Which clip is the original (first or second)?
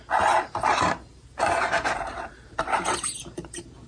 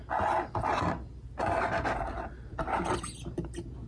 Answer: second